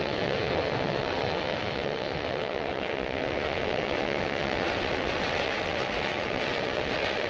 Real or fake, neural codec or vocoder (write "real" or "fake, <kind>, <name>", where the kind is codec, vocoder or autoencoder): fake, vocoder, WaveNeXt